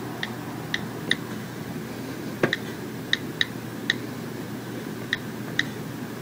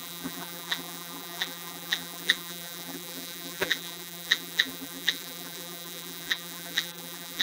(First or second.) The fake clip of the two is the second